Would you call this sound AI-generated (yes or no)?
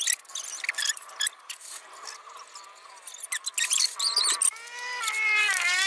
no